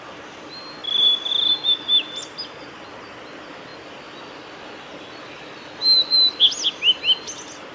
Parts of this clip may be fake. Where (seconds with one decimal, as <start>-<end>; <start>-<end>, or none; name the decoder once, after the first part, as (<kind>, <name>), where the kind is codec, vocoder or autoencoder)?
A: none